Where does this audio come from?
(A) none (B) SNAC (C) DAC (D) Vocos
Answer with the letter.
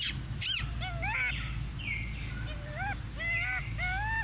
A